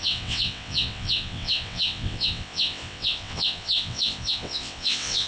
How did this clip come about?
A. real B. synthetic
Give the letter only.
B